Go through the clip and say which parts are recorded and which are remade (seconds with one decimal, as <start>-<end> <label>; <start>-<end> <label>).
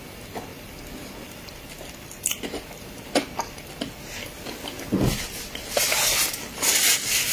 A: 0.0-0.5 recorded; 0.5-1.1 remade; 1.1-7.3 recorded